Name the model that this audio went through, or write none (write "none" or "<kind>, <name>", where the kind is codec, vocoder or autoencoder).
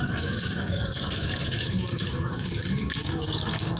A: codec, DAC